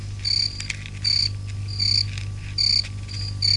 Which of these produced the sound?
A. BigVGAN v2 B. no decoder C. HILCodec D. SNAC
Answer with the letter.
B